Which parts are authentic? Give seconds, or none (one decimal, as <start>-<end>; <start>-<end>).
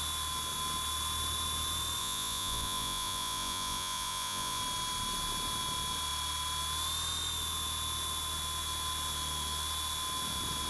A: 0.0-2.0; 4.6-10.7